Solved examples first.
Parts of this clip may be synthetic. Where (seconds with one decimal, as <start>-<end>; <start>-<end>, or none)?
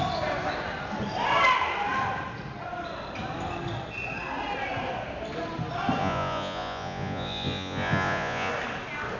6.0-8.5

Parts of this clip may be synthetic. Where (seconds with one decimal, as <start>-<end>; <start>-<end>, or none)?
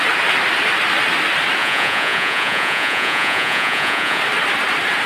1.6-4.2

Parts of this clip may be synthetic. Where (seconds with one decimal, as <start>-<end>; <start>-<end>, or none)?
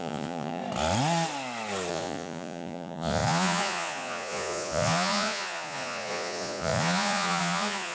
0.0-0.6; 1.9-7.9